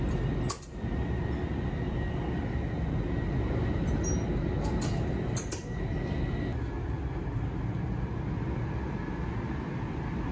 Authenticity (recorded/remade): recorded